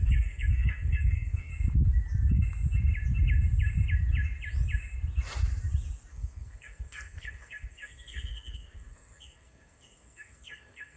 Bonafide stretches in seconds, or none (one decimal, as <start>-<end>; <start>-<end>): 1.5-6.1